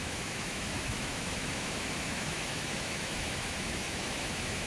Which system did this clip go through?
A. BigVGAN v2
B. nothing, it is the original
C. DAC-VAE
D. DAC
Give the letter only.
C